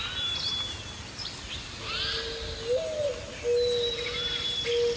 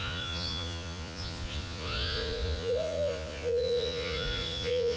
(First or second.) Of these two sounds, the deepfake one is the second